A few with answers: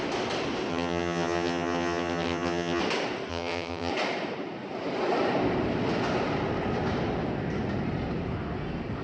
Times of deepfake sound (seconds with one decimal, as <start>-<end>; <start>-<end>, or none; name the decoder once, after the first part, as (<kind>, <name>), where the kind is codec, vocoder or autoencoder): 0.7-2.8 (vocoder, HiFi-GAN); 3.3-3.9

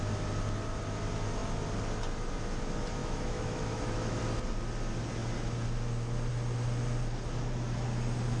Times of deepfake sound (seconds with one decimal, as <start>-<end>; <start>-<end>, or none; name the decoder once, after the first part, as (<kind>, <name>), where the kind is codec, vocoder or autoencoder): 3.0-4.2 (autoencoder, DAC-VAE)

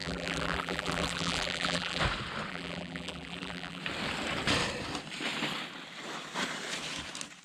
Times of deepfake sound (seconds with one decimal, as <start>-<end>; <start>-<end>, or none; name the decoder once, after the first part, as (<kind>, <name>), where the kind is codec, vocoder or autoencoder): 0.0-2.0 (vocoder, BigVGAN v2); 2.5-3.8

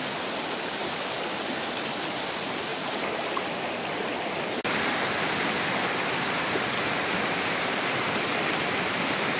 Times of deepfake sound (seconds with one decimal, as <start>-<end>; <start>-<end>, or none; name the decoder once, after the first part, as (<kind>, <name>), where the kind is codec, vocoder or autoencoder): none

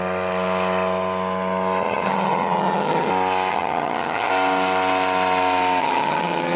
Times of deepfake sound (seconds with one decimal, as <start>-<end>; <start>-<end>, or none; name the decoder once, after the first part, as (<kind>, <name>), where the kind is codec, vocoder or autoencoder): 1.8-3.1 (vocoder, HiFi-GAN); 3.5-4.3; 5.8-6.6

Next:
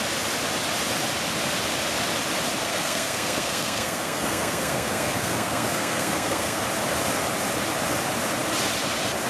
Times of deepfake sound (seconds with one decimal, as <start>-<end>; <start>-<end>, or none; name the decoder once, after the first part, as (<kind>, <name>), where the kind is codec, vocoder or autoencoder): 2.6-6.6 (codec, SNAC)